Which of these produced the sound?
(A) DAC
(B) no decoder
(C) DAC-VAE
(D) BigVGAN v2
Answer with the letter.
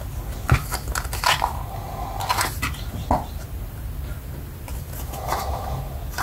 B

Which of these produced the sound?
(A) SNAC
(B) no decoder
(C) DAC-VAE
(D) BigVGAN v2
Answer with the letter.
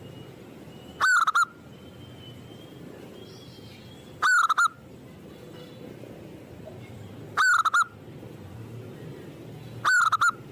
B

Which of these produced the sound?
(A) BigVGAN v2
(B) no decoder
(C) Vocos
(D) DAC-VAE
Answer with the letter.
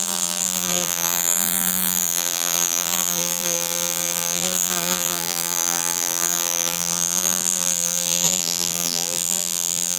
A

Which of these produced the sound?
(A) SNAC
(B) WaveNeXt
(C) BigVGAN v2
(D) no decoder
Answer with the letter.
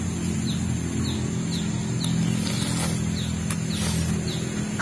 D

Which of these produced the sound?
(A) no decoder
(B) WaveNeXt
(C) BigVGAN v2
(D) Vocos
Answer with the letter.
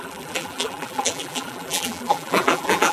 C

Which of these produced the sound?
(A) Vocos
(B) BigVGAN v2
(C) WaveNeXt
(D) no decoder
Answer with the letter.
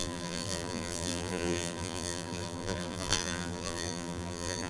B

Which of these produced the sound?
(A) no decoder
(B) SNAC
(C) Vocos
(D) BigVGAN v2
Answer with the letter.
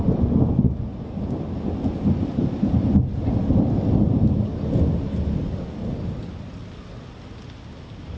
A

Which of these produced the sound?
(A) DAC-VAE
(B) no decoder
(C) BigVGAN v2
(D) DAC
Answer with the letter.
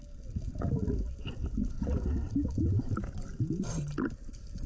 B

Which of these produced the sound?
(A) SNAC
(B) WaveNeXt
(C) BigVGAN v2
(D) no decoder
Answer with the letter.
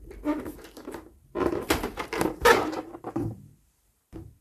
C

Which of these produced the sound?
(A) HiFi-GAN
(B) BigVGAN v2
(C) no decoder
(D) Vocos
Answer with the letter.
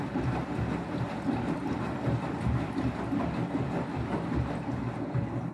B